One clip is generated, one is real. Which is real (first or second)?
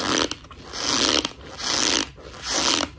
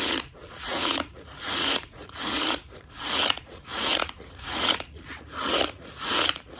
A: first